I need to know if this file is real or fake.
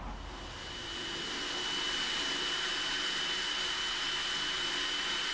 real